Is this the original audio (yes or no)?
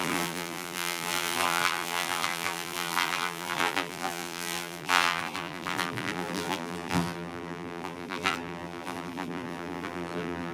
no